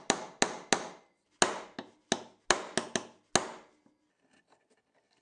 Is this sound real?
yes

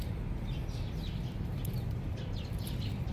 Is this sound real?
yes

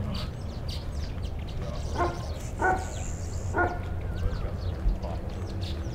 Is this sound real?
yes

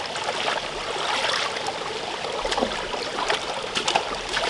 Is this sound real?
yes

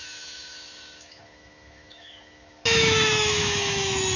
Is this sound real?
no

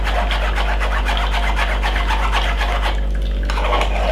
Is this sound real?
yes